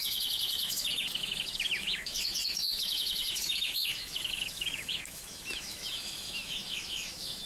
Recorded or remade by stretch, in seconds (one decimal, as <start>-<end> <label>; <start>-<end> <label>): 0.0-7.5 remade